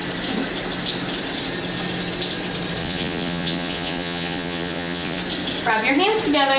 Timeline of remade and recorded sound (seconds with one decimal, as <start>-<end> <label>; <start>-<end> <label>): 0.0-2.8 recorded; 2.8-5.2 remade; 5.2-6.6 recorded